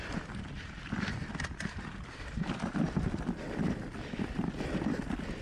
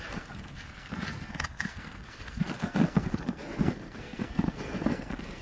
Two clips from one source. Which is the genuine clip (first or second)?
first